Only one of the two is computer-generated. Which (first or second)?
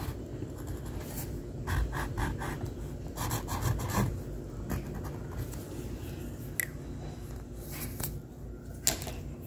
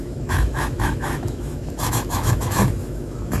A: second